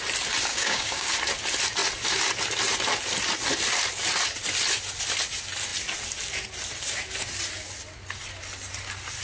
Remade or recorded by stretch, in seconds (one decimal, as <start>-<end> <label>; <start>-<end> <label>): 0.0-0.5 recorded; 0.5-1.1 remade; 1.1-9.2 recorded